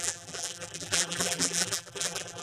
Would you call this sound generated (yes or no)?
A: yes